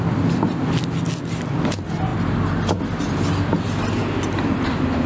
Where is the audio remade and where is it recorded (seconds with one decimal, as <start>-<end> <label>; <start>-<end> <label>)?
0.0-5.1 recorded